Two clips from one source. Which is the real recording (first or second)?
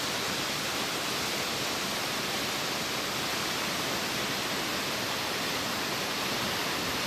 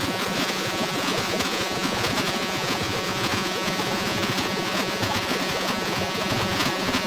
first